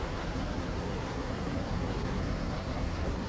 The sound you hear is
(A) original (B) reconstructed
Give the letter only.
B